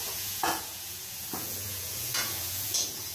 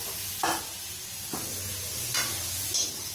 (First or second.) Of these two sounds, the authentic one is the second